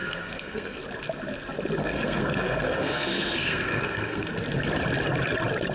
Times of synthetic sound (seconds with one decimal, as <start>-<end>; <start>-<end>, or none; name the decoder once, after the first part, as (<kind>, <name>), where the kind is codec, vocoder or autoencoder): 0.0-0.8 (codec, SNAC); 1.8-4.3